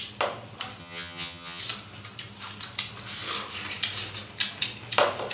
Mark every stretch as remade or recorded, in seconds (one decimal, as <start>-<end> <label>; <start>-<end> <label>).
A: 0.0-0.8 recorded; 0.8-1.6 remade; 1.6-5.3 recorded